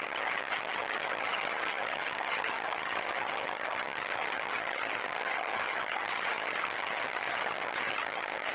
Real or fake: fake